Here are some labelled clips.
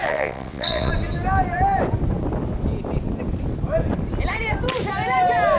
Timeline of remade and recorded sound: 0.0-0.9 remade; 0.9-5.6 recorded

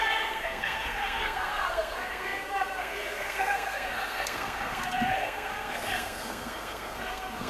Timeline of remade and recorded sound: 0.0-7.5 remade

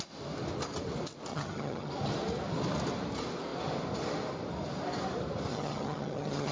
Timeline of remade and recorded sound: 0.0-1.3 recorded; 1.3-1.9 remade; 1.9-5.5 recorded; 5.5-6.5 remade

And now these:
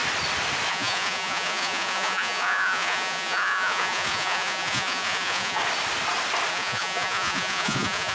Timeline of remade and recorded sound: 0.0-0.7 recorded; 0.7-5.6 remade; 5.6-6.5 recorded; 6.5-8.1 remade

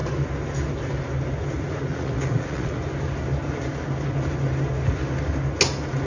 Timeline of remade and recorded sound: 0.0-1.9 recorded; 1.9-2.8 remade; 2.8-6.1 recorded